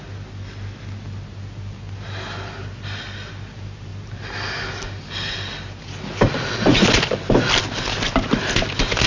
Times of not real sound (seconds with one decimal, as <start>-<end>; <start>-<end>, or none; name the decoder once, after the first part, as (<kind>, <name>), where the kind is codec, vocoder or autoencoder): none